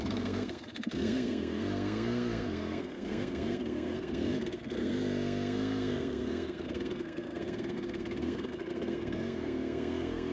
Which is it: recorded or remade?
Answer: remade